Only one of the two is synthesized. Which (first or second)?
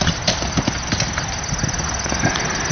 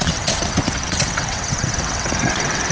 second